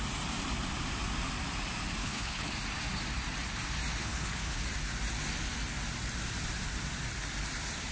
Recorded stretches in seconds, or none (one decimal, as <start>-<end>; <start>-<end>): 0.0-2.0; 2.5-4.0; 4.6-7.9